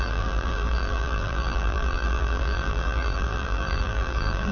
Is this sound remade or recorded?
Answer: remade